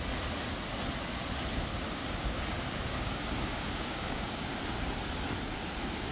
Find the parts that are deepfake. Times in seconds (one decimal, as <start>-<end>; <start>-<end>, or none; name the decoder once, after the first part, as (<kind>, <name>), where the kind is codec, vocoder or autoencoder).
1.7-4.6 (codec, DAC)